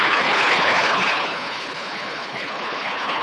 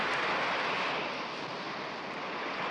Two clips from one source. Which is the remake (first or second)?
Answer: first